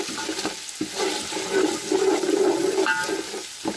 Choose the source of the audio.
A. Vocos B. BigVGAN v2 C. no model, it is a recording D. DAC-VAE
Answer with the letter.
C